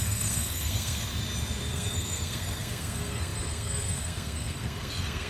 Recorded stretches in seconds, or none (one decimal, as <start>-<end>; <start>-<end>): 1.1-1.7